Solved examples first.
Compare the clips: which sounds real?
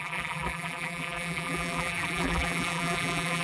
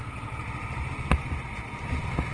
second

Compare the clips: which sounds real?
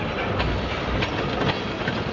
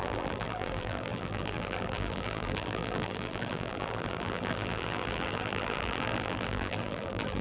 first